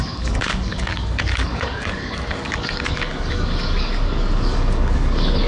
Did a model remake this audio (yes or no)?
yes